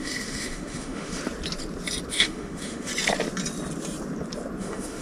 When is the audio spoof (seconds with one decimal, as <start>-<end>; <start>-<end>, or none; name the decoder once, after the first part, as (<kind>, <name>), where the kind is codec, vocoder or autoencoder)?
0.0-1.2 (autoencoder, DAC-VAE); 2.1-2.9; 4.6-5.0